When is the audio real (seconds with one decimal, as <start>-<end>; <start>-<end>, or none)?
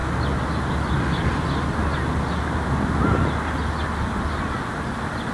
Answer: 0.0-5.3